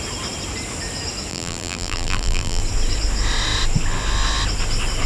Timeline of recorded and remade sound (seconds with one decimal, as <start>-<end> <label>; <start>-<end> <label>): 0.0-1.3 recorded; 1.3-2.6 remade; 2.6-5.1 recorded